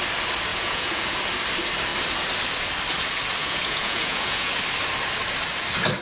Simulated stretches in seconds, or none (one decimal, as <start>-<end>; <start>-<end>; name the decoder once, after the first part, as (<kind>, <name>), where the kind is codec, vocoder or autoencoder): 0.5-1.2 (vocoder, Vocos); 3.4-4.5